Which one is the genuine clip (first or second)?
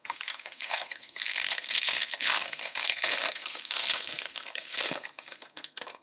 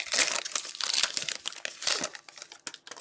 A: second